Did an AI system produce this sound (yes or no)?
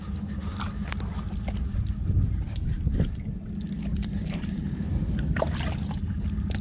no